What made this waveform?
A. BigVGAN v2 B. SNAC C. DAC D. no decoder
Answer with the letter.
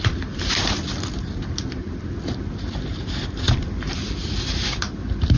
A